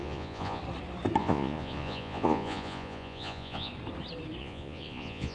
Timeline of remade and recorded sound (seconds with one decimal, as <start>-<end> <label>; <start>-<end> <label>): 0.0-0.6 remade; 0.6-1.2 recorded; 1.2-3.7 remade; 3.7-4.4 recorded; 4.4-5.3 remade